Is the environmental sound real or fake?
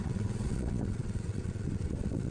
fake